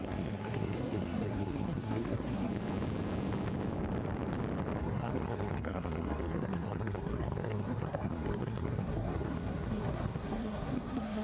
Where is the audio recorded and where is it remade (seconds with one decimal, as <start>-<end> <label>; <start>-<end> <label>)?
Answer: 0.0-2.5 remade; 2.5-4.8 recorded; 4.8-11.2 remade